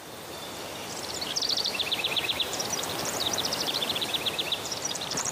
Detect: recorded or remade remade